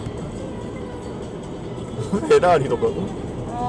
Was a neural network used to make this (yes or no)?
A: no